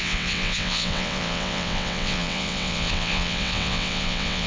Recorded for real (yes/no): no